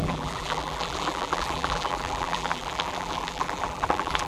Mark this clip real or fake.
fake